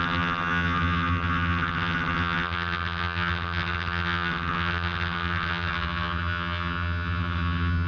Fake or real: fake